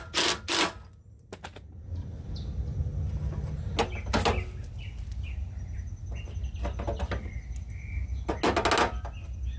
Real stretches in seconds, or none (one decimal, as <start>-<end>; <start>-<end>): 0.0-9.6